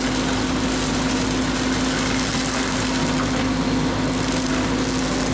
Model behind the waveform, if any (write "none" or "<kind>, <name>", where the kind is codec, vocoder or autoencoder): none